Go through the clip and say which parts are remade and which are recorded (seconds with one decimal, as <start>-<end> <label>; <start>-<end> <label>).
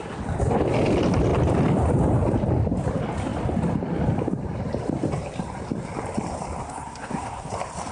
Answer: 0.0-6.6 recorded; 6.6-7.5 remade; 7.5-7.9 recorded